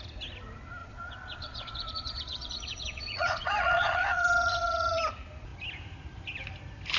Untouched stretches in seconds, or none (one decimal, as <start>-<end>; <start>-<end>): 0.0-0.8; 5.0-7.0